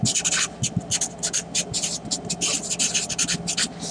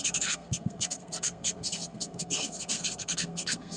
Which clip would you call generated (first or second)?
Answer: second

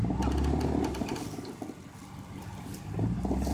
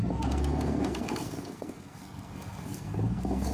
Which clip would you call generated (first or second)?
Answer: second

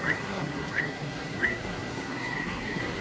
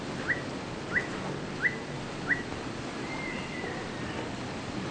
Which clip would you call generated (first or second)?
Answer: first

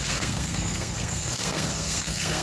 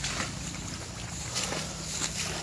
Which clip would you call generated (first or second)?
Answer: first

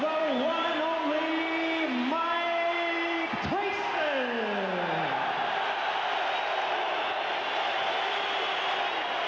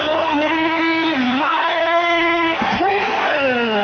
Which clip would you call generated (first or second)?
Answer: second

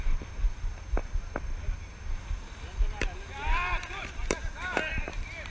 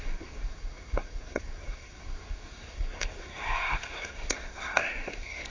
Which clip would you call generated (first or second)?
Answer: second